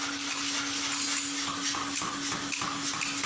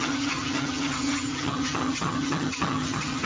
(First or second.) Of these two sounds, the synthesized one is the second